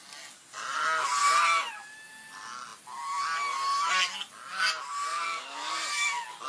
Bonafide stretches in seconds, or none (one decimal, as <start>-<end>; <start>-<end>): 0.0-5.1; 6.1-6.5